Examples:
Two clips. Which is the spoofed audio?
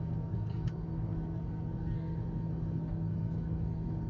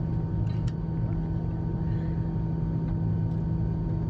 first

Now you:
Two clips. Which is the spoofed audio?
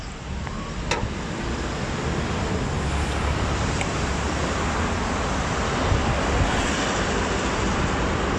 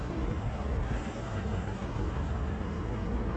second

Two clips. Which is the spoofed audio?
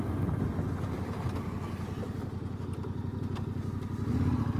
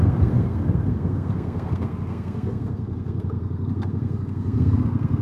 second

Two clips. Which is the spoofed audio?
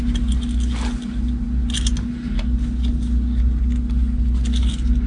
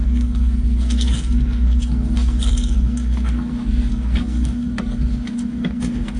second